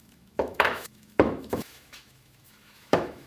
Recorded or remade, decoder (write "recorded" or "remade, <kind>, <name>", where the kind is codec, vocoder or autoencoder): remade, autoencoder, DAC-VAE